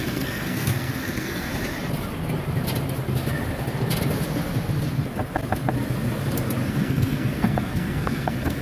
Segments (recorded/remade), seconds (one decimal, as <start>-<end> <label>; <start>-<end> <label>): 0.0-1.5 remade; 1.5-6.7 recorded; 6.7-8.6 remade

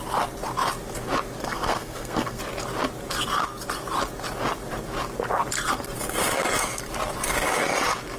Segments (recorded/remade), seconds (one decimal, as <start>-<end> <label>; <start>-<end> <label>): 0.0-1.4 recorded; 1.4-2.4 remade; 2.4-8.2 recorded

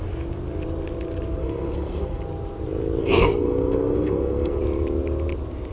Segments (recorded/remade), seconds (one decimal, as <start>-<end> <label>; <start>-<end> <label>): 0.0-1.4 recorded; 1.4-2.2 remade; 2.2-3.0 recorded; 3.0-4.6 remade; 4.6-5.7 recorded

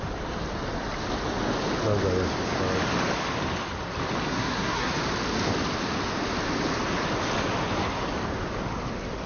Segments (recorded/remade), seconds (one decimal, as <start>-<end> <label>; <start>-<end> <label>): 0.0-4.3 recorded; 4.3-4.9 remade; 4.9-9.3 recorded